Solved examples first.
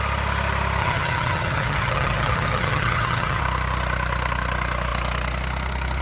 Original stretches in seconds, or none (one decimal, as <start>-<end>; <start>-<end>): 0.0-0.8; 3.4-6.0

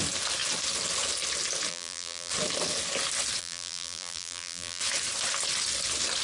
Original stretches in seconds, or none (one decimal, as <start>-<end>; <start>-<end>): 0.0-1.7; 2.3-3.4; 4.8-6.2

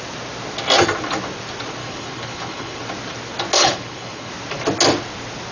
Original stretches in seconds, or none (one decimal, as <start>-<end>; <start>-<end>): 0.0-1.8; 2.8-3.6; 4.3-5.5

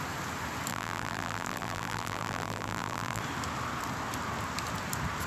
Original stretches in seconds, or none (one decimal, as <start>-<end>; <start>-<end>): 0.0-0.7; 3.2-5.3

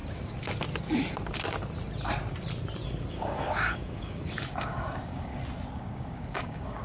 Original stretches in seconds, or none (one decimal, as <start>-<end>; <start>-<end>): 0.0-3.1; 5.3-5.8